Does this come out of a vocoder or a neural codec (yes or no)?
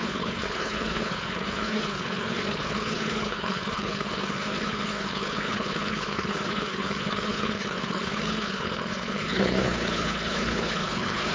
yes